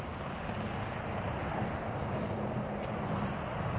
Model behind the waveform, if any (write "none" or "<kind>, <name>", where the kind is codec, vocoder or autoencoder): none